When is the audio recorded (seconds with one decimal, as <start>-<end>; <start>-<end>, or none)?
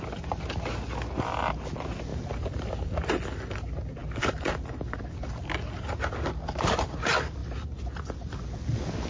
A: 0.0-2.1; 3.1-4.0; 6.3-7.4; 8.3-9.1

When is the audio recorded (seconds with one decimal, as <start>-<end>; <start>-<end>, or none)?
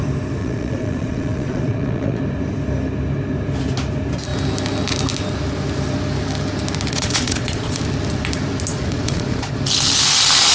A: 0.0-0.4; 2.2-6.9; 7.8-8.7; 9.6-10.5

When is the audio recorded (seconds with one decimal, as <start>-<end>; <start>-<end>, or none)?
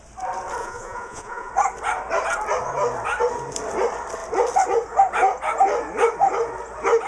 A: 0.0-0.6; 1.5-7.1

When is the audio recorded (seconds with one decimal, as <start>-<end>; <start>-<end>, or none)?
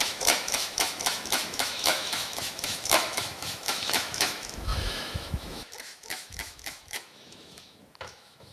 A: none